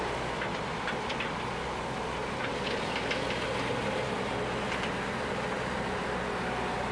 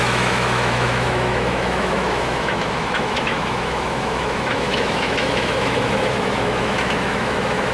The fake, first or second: second